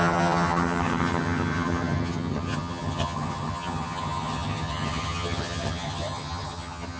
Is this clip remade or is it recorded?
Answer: remade